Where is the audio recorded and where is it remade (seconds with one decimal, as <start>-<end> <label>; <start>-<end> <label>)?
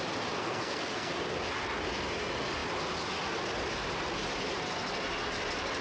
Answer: 0.0-0.4 recorded; 0.4-1.1 remade; 1.1-5.8 recorded